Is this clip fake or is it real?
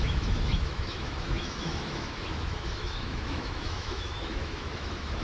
fake